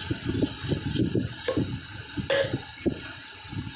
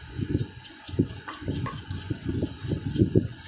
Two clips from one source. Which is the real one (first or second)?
first